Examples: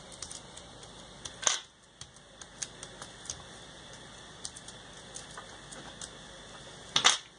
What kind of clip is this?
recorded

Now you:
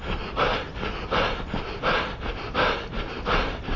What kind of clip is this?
recorded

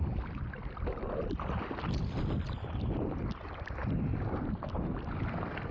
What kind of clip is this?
recorded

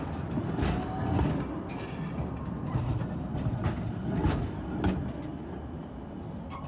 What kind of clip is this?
recorded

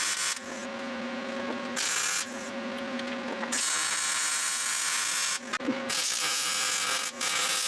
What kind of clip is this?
recorded